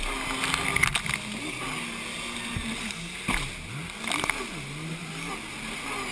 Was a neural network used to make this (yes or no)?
no